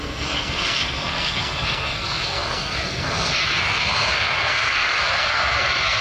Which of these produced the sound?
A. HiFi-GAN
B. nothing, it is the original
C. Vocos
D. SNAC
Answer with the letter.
D